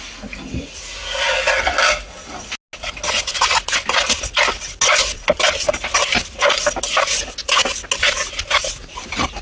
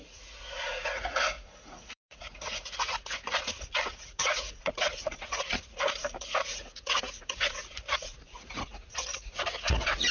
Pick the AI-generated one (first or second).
second